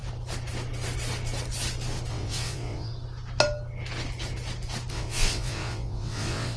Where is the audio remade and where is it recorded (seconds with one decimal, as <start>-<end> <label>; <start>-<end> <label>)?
0.0-2.1 recorded; 2.1-2.9 remade; 2.9-4.9 recorded; 4.9-6.6 remade